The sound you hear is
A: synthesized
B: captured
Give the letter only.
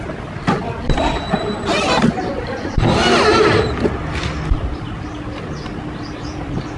B